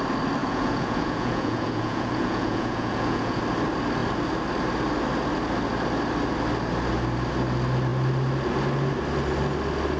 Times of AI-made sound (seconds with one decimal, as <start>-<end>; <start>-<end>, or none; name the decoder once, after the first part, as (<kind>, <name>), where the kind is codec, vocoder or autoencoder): 0.4-3.4 (vocoder, Vocos)